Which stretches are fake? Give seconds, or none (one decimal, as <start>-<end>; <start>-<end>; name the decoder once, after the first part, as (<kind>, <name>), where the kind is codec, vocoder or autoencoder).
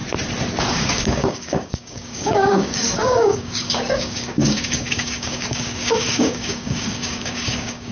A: 0.7-7.9 (codec, DAC)